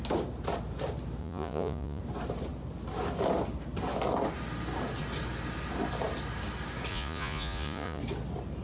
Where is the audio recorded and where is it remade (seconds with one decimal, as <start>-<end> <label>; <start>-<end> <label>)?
0.0-1.2 recorded; 1.2-2.0 remade; 2.0-6.9 recorded; 6.9-8.0 remade; 8.0-8.6 recorded